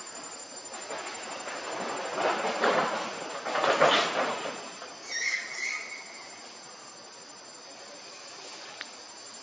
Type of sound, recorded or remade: recorded